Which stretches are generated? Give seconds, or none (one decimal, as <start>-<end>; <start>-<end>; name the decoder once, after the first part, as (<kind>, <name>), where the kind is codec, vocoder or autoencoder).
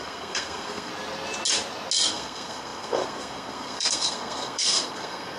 0.0-0.9 (codec, SNAC); 2.1-5.4